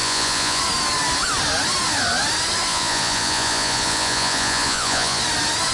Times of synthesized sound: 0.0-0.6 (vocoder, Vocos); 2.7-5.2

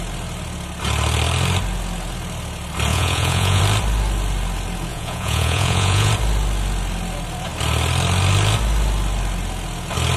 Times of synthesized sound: 2.9-3.6 (vocoder, Vocos); 4.9-6.1